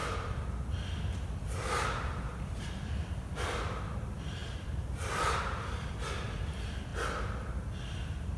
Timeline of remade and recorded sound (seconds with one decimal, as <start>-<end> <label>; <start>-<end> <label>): 0.0-6.9 remade; 6.9-7.7 recorded; 7.7-8.4 remade